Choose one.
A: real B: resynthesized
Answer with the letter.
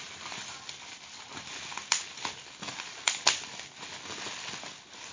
A